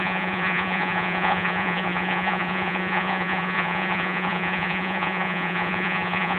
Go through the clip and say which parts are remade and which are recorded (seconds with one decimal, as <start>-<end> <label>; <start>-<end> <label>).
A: 0.0-6.4 remade